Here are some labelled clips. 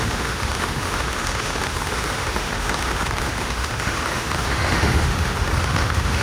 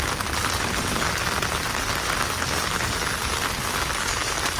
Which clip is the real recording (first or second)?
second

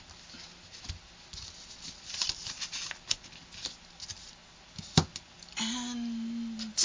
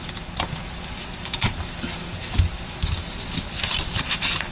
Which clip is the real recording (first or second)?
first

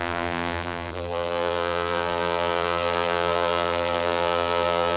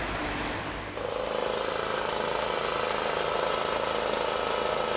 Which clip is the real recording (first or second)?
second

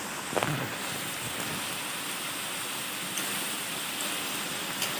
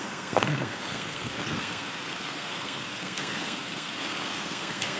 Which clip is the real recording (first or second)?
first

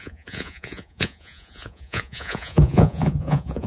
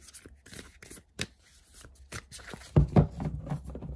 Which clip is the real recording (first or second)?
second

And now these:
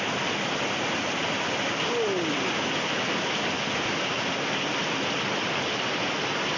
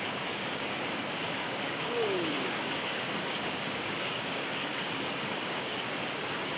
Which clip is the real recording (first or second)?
first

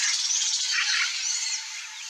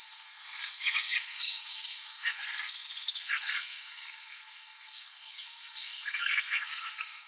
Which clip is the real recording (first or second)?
first